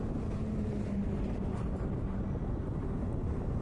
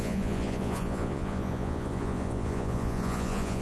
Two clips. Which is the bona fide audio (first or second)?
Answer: first